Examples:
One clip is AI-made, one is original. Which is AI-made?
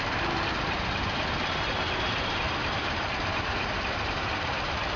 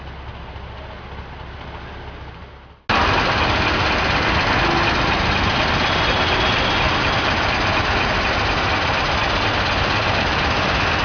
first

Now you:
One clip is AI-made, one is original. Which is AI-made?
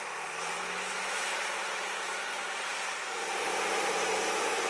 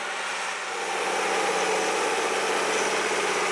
first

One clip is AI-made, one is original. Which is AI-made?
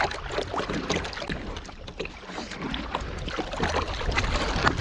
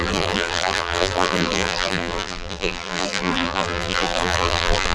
second